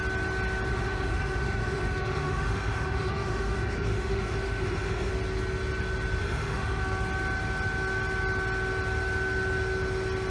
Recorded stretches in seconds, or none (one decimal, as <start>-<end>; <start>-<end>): 0.0-0.7; 5.1-6.2; 6.8-10.3